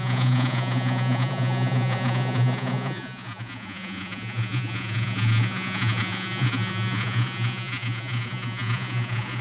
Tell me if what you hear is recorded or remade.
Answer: remade